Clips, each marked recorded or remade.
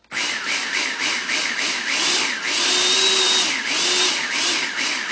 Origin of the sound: recorded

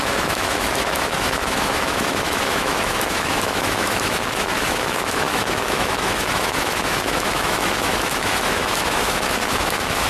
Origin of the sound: remade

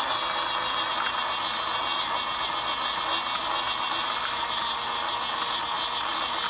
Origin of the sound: recorded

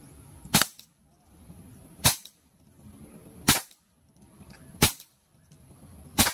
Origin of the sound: remade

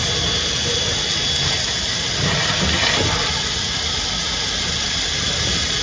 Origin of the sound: recorded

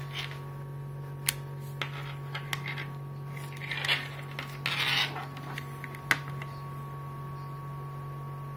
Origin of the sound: recorded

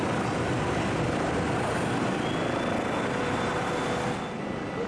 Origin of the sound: recorded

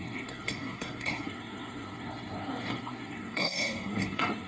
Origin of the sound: remade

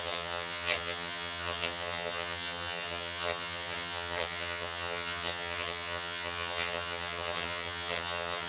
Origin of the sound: remade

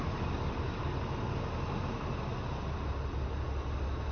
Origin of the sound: recorded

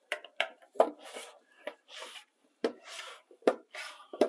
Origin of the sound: remade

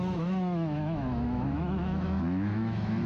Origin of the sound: remade